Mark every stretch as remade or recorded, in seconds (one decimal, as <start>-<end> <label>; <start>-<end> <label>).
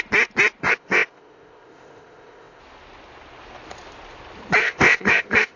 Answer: 0.0-0.6 recorded; 0.6-2.6 remade; 2.6-4.6 recorded; 4.6-5.6 remade